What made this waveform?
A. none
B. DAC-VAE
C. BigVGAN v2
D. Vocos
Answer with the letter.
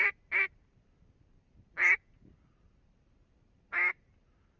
C